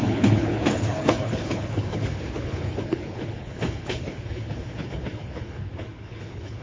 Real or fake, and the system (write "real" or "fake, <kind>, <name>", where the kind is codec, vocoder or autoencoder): fake, codec, HILCodec